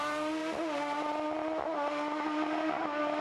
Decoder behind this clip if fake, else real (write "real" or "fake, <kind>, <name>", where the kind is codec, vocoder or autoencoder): real